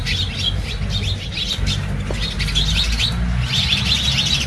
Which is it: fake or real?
real